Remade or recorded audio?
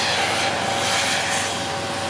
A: recorded